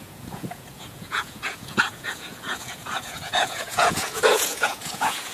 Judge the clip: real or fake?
fake